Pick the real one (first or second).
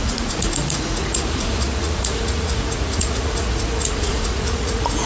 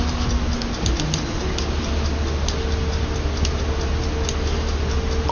second